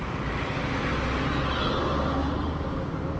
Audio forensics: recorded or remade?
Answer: recorded